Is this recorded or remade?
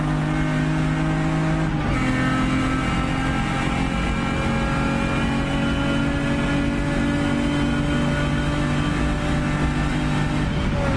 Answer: recorded